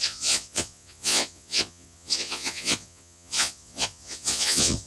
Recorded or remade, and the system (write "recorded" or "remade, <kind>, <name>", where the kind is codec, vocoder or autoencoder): remade, vocoder, Vocos